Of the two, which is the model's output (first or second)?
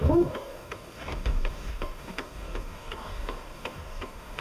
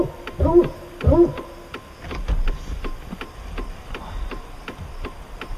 first